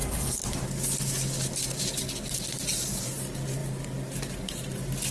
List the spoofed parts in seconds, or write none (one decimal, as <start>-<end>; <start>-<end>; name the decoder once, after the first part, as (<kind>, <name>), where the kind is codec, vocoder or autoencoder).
none